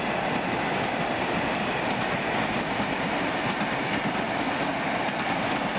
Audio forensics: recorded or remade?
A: recorded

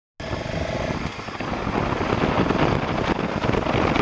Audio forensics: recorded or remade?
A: recorded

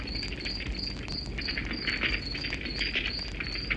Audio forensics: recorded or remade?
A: recorded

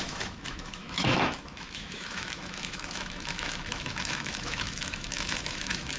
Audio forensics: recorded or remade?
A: remade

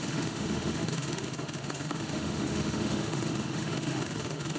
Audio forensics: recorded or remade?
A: remade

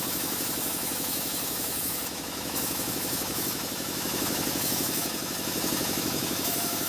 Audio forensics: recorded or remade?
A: remade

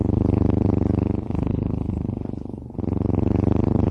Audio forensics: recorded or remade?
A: recorded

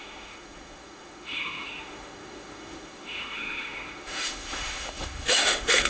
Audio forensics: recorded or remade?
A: remade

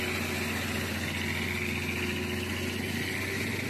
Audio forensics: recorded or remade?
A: recorded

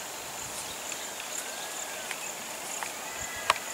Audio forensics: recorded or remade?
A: recorded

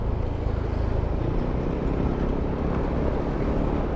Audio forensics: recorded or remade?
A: recorded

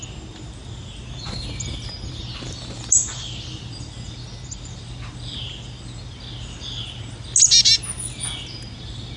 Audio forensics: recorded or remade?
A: recorded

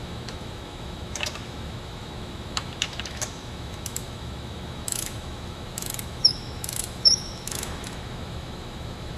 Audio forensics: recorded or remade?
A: remade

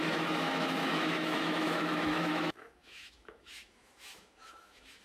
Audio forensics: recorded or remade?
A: remade